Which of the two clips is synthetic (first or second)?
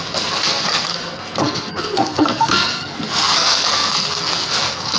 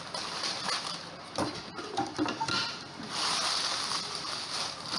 first